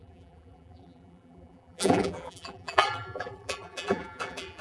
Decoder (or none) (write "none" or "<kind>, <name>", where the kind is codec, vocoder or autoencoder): vocoder, BigVGAN v2